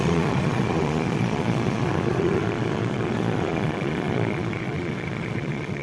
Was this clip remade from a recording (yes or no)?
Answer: yes